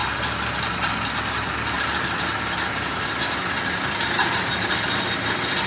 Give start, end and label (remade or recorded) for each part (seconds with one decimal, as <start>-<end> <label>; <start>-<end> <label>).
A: 0.0-5.7 recorded

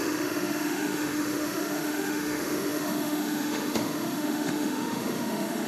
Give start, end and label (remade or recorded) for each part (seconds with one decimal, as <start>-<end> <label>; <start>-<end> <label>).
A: 0.0-5.7 remade

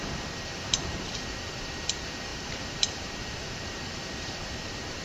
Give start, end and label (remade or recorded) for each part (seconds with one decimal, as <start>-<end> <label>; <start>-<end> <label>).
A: 0.0-5.0 remade

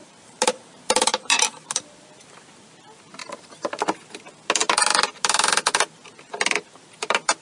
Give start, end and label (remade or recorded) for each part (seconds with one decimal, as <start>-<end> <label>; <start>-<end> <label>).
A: 0.0-2.6 remade; 2.6-3.2 recorded; 3.2-3.8 remade; 3.8-7.4 recorded

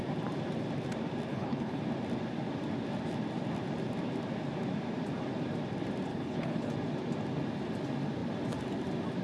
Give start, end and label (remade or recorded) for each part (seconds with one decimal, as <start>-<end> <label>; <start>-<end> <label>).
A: 0.0-1.3 recorded; 1.3-1.8 remade; 1.8-6.1 recorded; 6.1-6.7 remade; 6.7-9.2 recorded

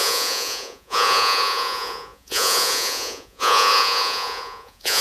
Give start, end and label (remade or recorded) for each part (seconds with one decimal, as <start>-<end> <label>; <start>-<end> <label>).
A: 0.0-5.0 remade